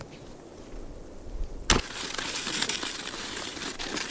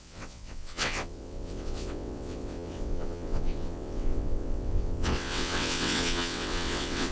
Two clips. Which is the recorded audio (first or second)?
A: first